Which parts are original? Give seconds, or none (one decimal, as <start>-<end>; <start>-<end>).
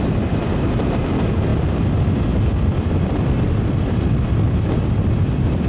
0.0-5.7